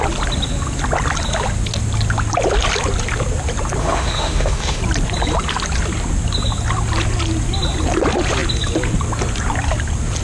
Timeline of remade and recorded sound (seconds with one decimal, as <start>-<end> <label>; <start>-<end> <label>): 0.0-3.8 recorded; 3.8-4.8 remade; 4.8-10.2 recorded